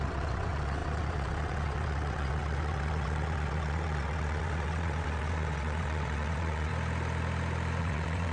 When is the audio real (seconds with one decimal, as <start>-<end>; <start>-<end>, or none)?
6.7-7.8